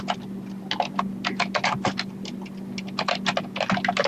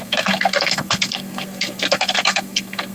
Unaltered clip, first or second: first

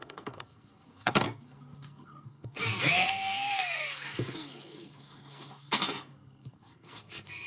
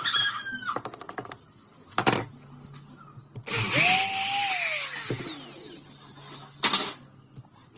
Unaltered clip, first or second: second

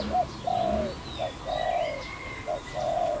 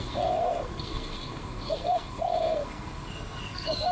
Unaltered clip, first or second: first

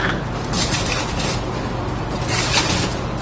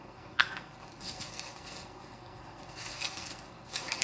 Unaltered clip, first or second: first